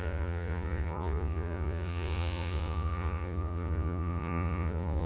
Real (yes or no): no